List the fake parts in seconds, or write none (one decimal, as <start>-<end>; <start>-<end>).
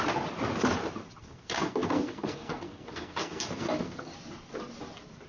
1.2-4.1